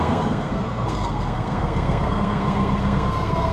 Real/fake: fake